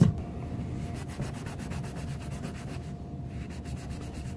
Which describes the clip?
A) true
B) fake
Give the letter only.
A